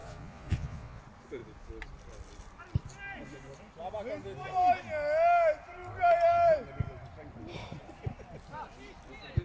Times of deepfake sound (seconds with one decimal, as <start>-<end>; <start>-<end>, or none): 0.0-1.0